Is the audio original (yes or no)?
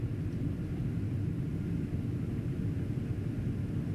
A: yes